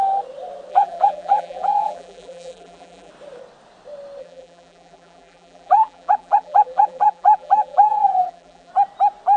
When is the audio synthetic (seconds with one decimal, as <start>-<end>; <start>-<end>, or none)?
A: 0.7-3.1; 4.2-8.7